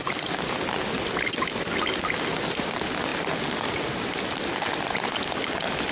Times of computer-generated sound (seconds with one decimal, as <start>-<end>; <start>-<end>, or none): none